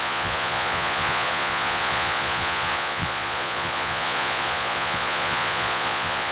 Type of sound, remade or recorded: remade